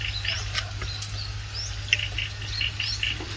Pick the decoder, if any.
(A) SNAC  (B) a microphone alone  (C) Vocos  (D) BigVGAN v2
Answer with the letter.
B